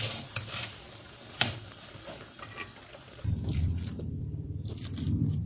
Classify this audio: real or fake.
fake